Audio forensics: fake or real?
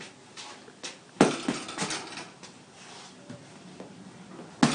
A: real